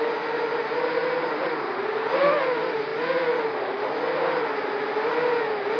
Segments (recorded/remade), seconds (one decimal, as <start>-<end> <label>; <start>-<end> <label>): 0.0-1.0 recorded; 1.0-2.0 remade; 2.0-5.8 recorded

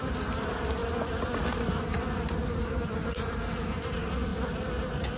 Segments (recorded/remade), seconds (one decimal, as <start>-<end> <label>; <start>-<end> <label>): 0.0-5.2 recorded